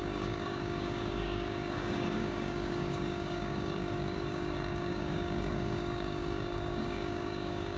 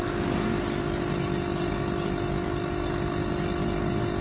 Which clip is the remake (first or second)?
first